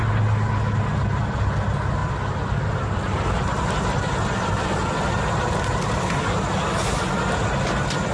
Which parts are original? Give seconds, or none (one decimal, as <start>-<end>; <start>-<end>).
0.0-8.1